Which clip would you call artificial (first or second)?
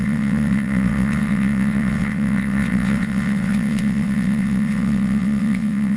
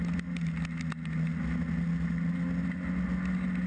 first